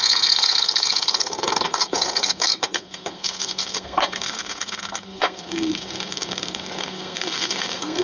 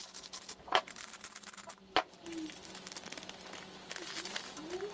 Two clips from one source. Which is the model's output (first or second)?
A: first